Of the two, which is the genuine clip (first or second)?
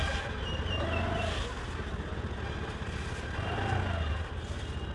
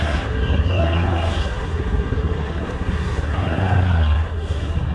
first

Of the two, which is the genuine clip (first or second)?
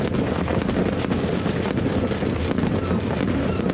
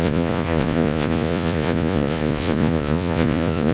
first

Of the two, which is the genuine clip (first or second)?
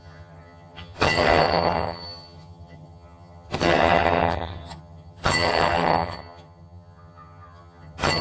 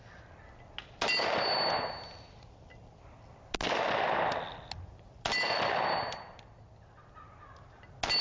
second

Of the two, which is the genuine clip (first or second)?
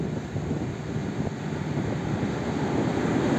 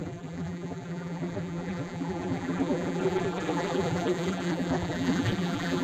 first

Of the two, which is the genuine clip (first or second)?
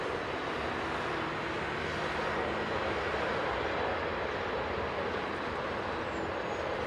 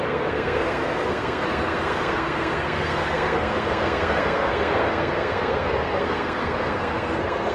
first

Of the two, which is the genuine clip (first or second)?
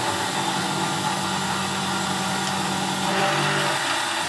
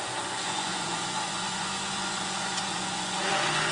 first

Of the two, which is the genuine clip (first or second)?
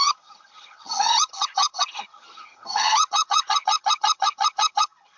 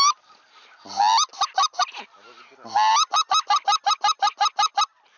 second